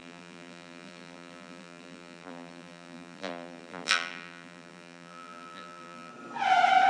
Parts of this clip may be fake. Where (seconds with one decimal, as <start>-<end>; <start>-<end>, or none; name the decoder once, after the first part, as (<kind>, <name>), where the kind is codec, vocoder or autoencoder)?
0.0-6.1 (vocoder, BigVGAN v2)